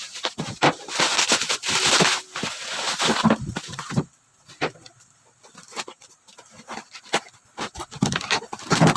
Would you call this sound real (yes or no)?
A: yes